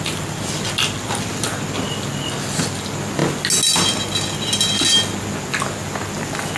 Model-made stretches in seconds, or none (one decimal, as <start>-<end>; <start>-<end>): none